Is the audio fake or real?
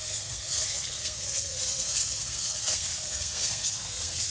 fake